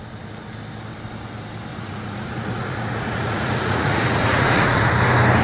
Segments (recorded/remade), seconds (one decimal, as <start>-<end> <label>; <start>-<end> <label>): 0.0-1.7 recorded; 1.7-4.9 remade; 4.9-5.4 recorded